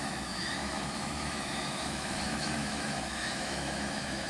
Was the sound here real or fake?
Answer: fake